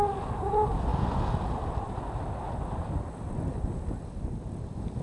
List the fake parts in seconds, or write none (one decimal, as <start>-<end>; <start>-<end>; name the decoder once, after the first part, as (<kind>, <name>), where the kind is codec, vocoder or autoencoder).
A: none